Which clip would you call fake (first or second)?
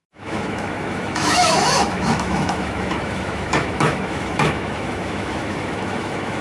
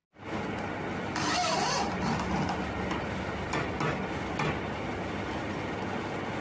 first